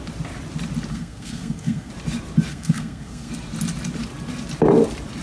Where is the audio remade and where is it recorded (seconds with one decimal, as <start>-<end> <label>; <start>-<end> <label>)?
0.0-0.9 recorded; 0.9-1.9 remade; 1.9-2.5 recorded; 2.5-3.3 remade; 3.3-5.2 recorded